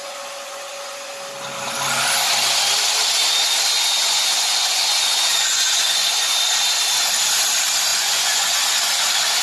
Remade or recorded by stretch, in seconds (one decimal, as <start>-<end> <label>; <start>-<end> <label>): 0.0-1.1 remade; 1.1-4.0 recorded; 4.0-6.4 remade; 6.4-7.9 recorded; 7.9-8.6 remade; 8.6-9.4 recorded